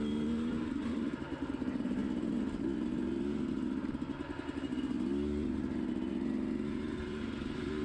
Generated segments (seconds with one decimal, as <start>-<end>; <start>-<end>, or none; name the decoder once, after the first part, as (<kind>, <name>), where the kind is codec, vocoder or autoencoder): 0.0-2.0 (vocoder, BigVGAN v2); 6.7-7.8